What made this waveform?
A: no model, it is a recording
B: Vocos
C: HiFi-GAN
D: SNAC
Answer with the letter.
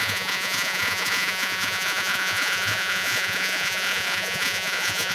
B